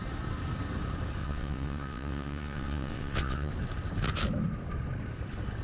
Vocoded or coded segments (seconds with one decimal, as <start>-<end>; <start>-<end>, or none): 1.2-3.5